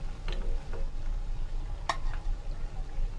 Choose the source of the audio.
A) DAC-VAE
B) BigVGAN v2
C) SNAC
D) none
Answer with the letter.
D